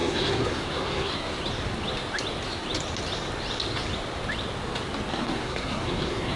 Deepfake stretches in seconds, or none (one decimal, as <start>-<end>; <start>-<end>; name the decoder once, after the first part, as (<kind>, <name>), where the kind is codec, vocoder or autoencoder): 0.0-1.3 (codec, SNAC); 5.1-6.4